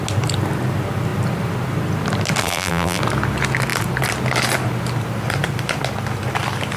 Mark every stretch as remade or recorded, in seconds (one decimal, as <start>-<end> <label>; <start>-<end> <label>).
0.0-2.4 recorded; 2.4-3.0 remade; 3.0-6.8 recorded